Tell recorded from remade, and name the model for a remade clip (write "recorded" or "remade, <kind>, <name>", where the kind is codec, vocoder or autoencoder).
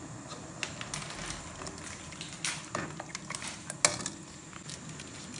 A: recorded